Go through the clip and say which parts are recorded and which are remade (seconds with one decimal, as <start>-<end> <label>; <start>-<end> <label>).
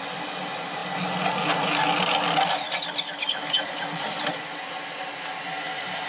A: 0.0-6.1 recorded